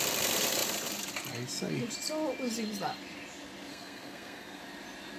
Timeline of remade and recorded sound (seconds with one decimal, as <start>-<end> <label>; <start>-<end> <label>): 0.0-3.7 recorded; 3.7-4.6 remade; 4.6-5.2 recorded